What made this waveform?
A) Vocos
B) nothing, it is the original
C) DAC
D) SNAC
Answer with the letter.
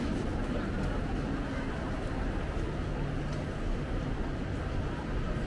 B